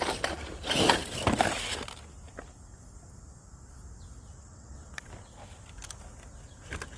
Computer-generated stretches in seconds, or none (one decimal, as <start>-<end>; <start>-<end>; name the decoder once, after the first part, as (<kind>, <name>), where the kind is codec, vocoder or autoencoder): 4.3-5.1 (vocoder, WaveNeXt)